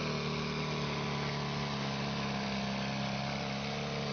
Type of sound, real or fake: real